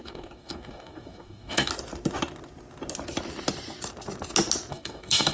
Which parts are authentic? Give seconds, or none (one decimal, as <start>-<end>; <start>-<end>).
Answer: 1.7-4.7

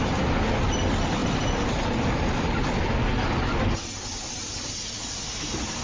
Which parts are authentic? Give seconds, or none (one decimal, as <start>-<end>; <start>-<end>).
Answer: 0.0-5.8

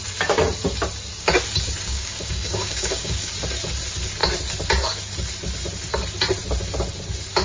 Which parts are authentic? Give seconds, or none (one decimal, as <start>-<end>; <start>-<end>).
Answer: 0.0-1.9; 3.3-7.4

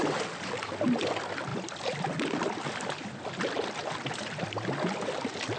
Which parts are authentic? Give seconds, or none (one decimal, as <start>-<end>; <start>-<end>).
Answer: 0.0-5.6

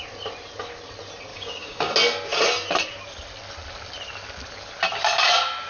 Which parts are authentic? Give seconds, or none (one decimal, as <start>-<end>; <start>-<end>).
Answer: 0.0-1.3; 1.9-5.7